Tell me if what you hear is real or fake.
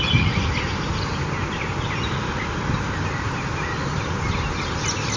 real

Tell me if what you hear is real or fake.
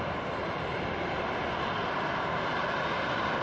fake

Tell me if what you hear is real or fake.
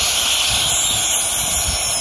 real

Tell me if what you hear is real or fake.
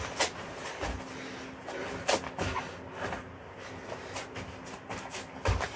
real